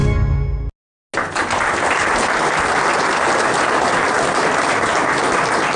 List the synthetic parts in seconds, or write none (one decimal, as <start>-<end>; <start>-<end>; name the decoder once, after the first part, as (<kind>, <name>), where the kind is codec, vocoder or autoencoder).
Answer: none